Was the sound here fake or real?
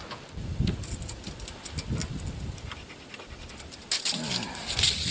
real